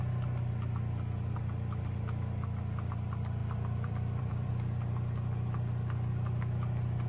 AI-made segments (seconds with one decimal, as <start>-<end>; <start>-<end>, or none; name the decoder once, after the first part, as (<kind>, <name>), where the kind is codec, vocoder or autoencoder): 3.4-4.5 (vocoder, BigVGAN v2)